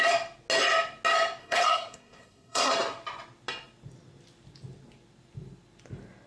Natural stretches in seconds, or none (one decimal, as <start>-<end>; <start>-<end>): 0.0-1.4; 2.7-6.3